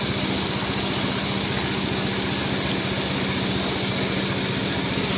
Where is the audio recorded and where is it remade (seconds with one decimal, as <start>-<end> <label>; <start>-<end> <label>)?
0.0-5.2 recorded